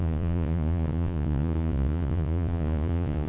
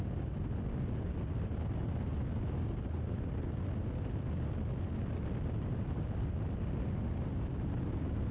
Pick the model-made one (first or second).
first